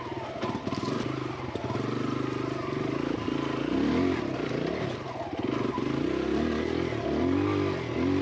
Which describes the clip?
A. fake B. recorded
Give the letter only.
B